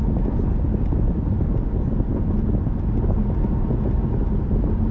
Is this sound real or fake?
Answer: real